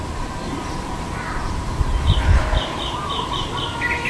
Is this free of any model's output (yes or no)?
yes